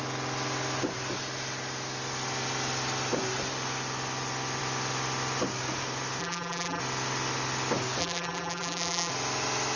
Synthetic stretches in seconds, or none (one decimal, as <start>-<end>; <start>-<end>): 6.2-6.8; 8.0-9.1